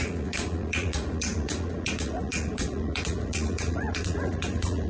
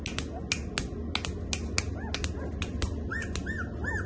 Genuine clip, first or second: second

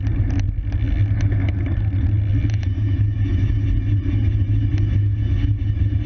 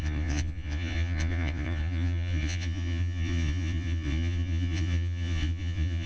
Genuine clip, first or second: first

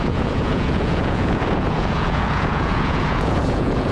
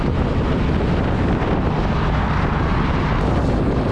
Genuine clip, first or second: second